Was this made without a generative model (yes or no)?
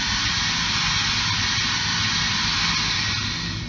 yes